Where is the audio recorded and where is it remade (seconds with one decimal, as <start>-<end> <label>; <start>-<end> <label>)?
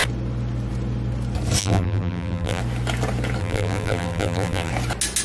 0.0-1.6 recorded; 1.6-2.6 remade; 2.6-3.4 recorded; 3.4-4.7 remade; 4.7-5.2 recorded